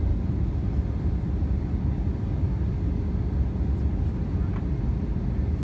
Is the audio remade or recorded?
recorded